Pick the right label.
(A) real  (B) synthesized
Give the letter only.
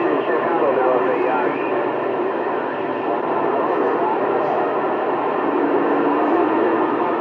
A